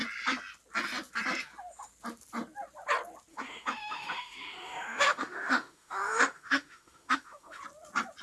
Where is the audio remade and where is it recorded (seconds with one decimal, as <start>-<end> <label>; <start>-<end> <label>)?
0.0-3.3 recorded; 3.3-7.6 remade; 7.6-8.2 recorded